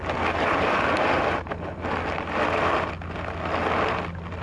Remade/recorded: recorded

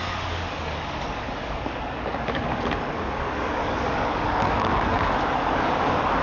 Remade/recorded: remade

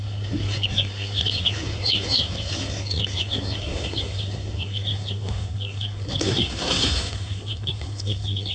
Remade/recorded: remade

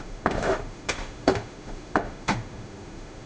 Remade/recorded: remade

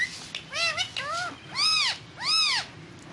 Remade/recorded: recorded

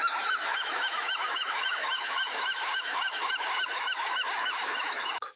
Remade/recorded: remade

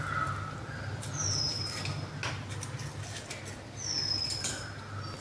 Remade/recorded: recorded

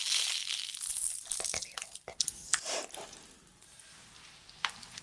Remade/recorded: recorded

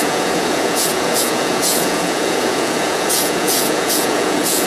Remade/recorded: remade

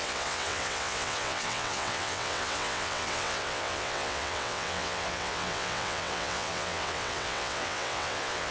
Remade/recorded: remade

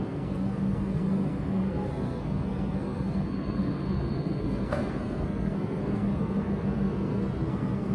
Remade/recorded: remade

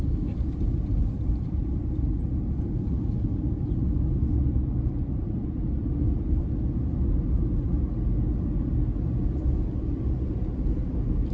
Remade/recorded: recorded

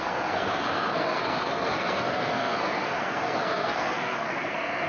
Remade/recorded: remade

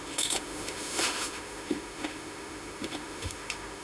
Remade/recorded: remade